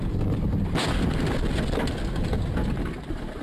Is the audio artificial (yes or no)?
no